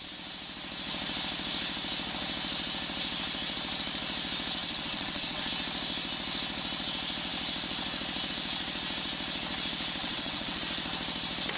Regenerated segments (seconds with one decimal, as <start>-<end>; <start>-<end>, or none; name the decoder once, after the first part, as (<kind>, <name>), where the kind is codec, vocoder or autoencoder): 4.6-5.5 (vocoder, WaveNeXt); 10.0-10.6